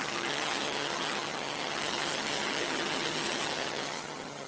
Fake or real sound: fake